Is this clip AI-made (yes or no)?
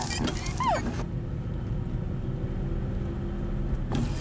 no